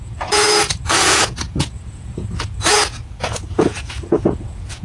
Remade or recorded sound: remade